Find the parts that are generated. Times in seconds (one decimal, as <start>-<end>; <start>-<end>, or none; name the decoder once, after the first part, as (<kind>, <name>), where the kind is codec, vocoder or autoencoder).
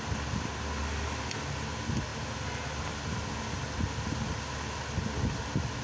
none